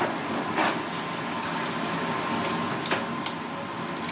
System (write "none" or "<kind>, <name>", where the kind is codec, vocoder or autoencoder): none